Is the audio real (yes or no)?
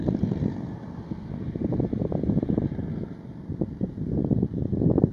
yes